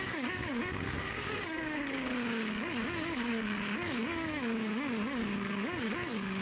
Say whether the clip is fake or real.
fake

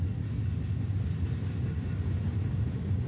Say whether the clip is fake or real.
real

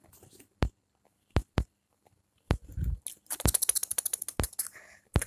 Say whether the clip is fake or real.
real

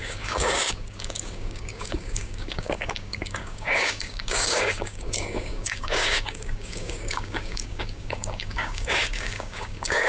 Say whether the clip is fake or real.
fake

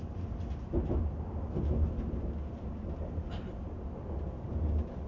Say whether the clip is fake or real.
real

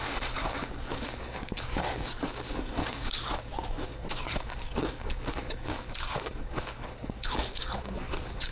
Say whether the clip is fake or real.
fake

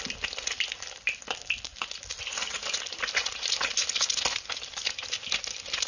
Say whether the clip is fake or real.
real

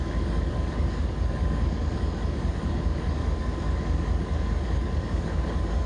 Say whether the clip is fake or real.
fake